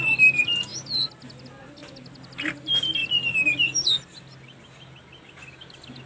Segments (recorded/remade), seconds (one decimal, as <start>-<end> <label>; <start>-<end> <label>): 0.0-6.1 recorded